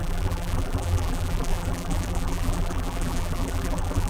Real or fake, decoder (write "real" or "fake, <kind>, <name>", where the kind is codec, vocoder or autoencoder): fake, vocoder, BigVGAN v2